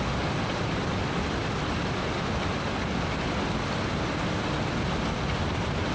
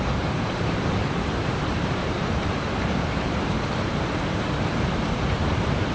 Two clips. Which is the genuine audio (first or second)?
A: first